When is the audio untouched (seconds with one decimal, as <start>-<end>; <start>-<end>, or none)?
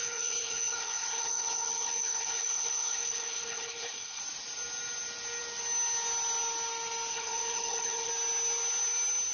4.2-7.1; 8.1-9.3